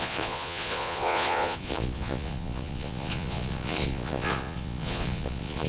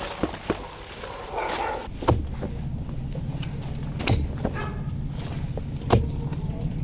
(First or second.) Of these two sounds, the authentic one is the second